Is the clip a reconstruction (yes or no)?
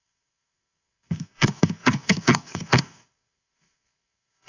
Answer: yes